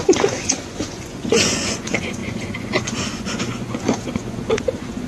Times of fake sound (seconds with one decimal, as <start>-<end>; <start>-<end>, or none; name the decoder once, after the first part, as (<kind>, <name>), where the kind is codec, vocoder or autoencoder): 0.0-5.1 (vocoder, Vocos)